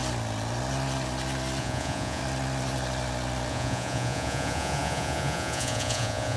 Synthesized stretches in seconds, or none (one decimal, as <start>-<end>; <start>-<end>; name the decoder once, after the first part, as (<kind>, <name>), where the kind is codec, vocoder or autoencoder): 1.6-2.2 (vocoder, Vocos); 3.5-6.4